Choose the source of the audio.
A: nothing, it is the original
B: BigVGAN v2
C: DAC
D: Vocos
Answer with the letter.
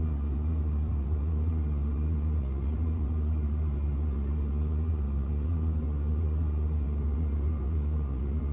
D